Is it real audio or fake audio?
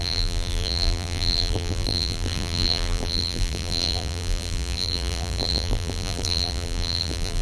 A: fake